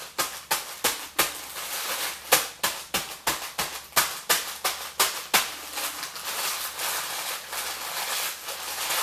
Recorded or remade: recorded